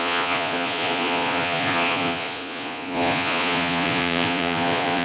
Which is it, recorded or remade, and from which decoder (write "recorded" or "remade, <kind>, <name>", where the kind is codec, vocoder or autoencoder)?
remade, vocoder, Vocos